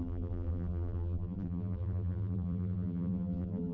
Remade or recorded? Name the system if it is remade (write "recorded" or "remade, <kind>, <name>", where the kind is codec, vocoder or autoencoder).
remade, vocoder, BigVGAN v2